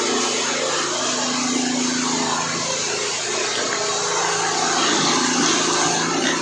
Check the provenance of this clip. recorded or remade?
recorded